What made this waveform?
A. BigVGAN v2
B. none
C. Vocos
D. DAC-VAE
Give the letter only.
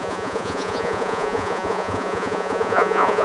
C